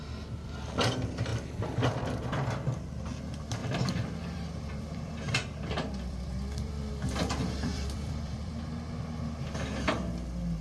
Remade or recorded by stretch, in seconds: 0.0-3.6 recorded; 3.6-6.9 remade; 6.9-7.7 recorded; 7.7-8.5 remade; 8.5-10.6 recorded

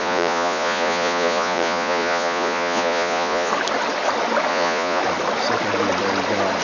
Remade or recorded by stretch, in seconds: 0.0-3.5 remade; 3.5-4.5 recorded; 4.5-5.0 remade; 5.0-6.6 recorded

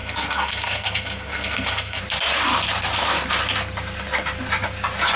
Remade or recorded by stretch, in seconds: 0.0-2.0 remade; 2.0-5.2 recorded

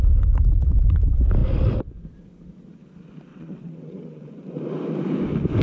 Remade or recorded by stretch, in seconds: 0.0-3.3 recorded; 3.3-4.3 remade; 4.3-5.6 recorded